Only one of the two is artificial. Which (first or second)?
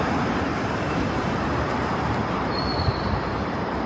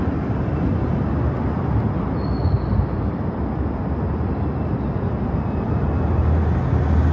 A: first